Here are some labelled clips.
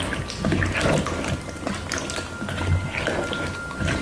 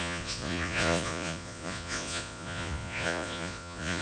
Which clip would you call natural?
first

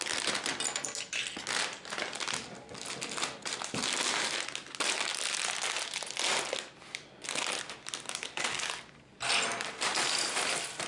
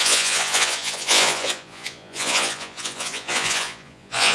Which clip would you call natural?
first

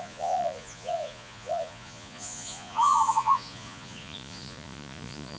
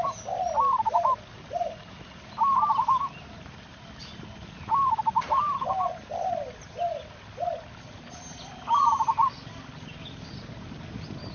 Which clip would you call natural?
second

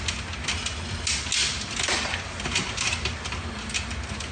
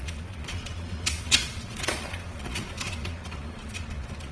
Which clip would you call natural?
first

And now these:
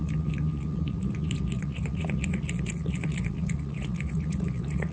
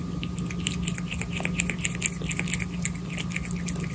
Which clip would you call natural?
second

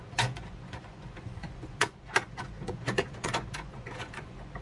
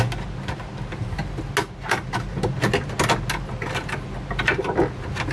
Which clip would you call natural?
second